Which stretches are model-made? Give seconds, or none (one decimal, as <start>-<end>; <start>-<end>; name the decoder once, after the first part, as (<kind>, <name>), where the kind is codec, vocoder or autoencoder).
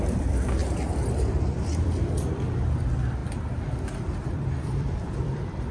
0.0-0.6 (vocoder, BigVGAN v2); 1.5-3.2; 4.3-5.7